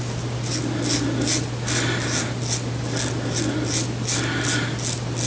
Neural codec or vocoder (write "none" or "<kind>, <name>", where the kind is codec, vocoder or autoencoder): none